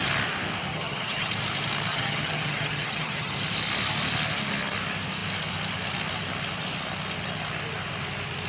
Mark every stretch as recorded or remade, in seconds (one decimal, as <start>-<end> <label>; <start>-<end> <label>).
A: 0.0-0.7 recorded; 0.7-1.3 remade; 1.3-1.9 recorded; 1.9-3.3 remade; 3.3-8.5 recorded